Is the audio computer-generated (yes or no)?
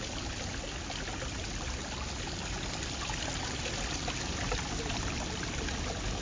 no